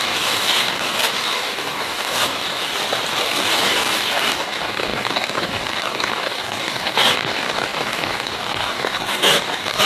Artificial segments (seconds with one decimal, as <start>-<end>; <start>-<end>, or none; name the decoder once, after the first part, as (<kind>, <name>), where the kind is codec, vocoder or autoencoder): 0.0-2.7 (codec, DAC); 3.2-9.9